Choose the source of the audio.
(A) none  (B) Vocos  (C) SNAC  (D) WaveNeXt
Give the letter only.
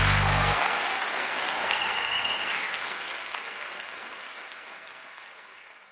C